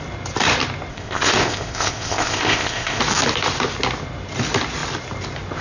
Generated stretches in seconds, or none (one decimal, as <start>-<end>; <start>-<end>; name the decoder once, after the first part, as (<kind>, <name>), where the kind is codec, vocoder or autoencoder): 0.9-3.0 (codec, ZipCodec)